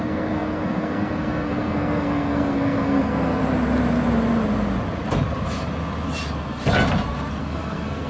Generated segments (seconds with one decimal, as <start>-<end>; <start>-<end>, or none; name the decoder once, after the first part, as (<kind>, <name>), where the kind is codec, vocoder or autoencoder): 0.0-3.4 (codec, SNAC); 7.4-8.1